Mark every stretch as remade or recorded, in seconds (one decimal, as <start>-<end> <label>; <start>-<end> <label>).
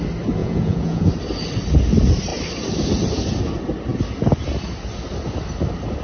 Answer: 0.0-0.4 recorded; 0.4-1.1 remade; 1.1-6.0 recorded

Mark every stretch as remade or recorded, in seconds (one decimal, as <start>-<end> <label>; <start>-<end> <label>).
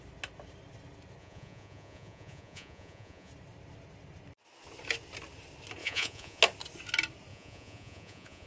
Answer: 0.0-1.2 recorded; 1.2-3.3 remade; 3.3-5.8 recorded; 5.8-6.4 remade; 6.4-7.3 recorded; 7.3-8.5 remade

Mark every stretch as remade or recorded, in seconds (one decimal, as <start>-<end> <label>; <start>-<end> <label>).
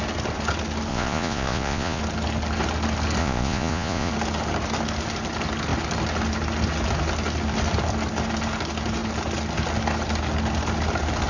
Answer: 0.0-0.9 recorded; 0.9-2.0 remade; 2.0-3.2 recorded; 3.2-4.1 remade; 4.1-11.3 recorded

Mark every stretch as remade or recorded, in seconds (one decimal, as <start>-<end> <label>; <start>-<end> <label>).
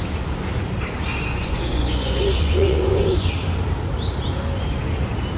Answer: 0.0-1.3 recorded; 1.3-3.3 remade; 3.3-5.4 recorded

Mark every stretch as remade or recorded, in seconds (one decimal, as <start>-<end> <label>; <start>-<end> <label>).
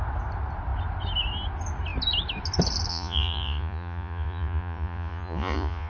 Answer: 0.0-2.9 recorded; 2.9-5.9 remade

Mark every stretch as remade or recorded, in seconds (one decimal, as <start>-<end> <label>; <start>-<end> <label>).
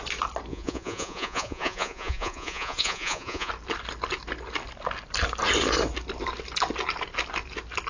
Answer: 0.0-0.5 recorded; 0.5-3.5 remade; 3.5-7.9 recorded